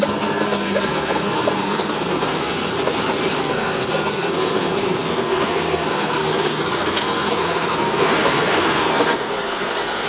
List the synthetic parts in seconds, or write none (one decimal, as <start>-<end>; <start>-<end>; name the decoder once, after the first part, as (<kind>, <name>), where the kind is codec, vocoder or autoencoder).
0.0-2.7 (codec, SNAC); 3.4-10.1